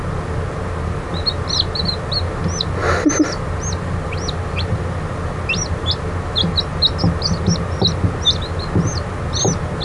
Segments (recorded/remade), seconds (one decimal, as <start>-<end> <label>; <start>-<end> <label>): 0.0-9.8 recorded